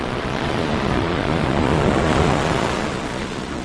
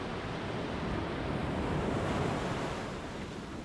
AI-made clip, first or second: first